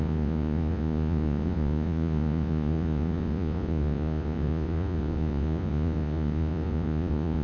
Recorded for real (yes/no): no